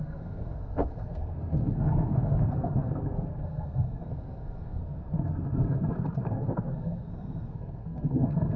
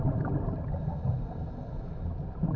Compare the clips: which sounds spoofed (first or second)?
first